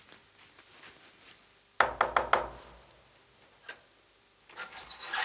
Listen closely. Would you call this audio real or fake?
real